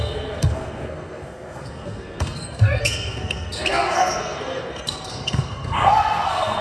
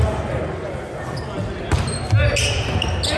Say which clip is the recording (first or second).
second